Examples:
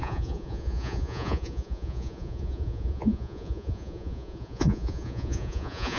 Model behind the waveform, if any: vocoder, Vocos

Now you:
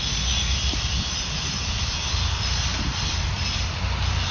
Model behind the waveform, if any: vocoder, BigVGAN v2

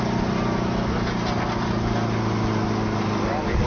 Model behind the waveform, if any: none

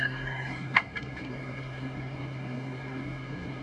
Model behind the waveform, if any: codec, SNAC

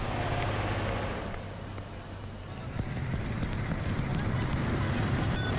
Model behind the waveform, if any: none